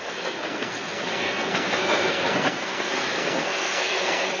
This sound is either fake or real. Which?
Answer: fake